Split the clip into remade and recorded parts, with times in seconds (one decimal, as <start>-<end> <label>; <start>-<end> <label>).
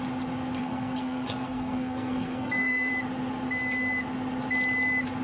0.0-0.6 recorded; 0.6-2.9 remade; 2.9-5.2 recorded